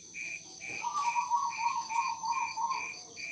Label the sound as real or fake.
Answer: fake